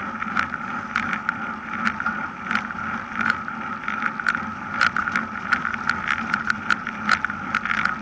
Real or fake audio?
real